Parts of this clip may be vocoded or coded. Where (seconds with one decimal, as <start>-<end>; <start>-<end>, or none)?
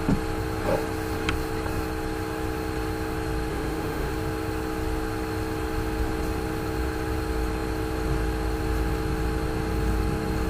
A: 3.5-4.1